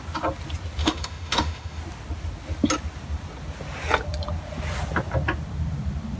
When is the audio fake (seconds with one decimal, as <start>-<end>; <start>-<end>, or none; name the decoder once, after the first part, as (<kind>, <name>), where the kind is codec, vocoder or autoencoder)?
0.8-1.8 (autoencoder, DAC-VAE)